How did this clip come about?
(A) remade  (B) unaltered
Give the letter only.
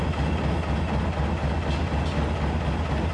B